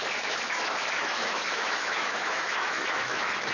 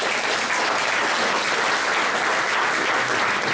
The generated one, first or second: first